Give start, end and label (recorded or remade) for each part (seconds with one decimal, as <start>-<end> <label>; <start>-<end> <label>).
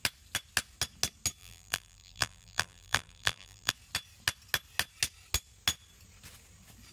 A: 0.0-1.4 recorded; 1.4-3.7 remade; 3.7-6.9 recorded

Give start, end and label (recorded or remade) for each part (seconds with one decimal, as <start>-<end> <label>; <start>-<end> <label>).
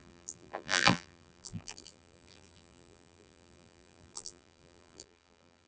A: 0.0-5.7 remade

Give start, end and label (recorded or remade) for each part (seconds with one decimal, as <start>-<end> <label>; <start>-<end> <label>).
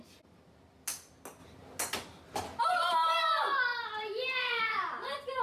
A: 0.0-3.7 recorded; 3.7-5.4 remade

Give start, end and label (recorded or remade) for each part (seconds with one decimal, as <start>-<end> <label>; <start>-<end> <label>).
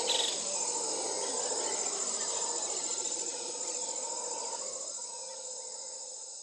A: 0.0-1.7 recorded; 1.7-3.5 remade; 3.5-6.4 recorded